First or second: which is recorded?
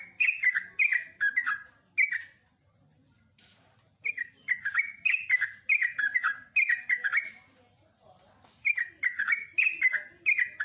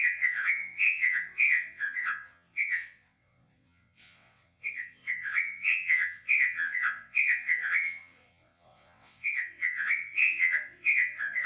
first